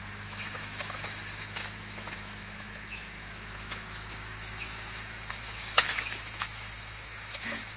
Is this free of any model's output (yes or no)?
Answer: no